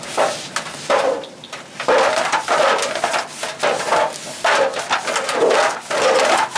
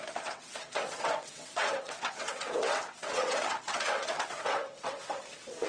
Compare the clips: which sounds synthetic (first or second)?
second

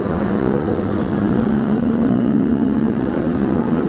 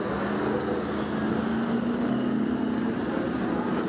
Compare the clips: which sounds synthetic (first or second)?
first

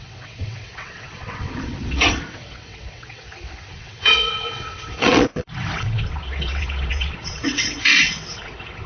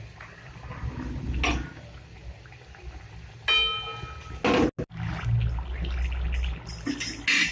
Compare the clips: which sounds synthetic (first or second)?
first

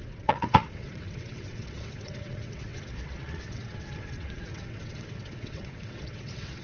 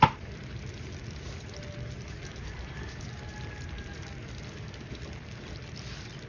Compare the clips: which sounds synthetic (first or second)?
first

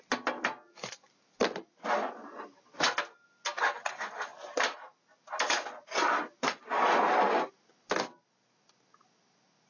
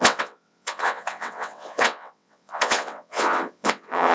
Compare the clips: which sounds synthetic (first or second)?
second